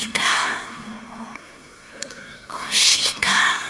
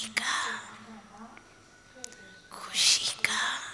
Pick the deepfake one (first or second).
first